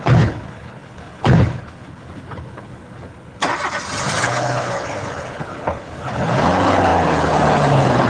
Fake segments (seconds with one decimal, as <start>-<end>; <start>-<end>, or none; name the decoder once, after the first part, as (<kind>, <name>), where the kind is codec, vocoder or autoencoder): 0.0-3.4 (codec, HILCodec); 4.0-8.1